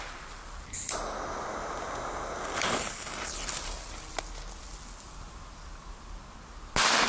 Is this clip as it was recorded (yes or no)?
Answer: yes